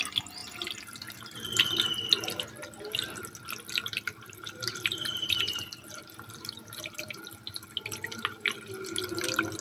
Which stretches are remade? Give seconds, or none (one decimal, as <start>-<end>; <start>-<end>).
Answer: 3.9-7.2